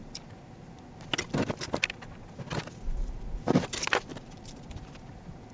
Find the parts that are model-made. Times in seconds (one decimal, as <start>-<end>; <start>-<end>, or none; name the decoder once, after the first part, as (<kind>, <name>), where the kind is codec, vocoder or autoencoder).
none